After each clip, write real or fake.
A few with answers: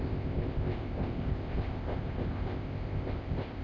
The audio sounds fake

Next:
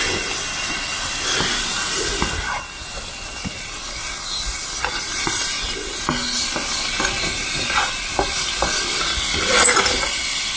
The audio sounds real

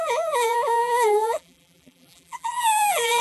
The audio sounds fake